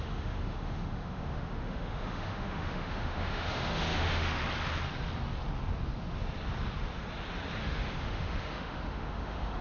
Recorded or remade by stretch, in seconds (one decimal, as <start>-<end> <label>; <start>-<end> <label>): 0.0-4.4 remade; 4.4-7.6 recorded; 7.6-9.6 remade